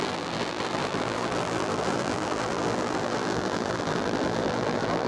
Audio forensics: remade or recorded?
remade